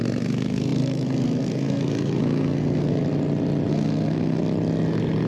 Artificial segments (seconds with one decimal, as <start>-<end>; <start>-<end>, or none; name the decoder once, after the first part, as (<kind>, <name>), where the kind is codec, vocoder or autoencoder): 0.0-3.0 (codec, SNAC); 3.7-4.4